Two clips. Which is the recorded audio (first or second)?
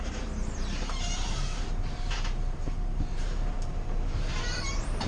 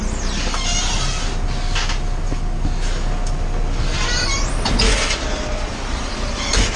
second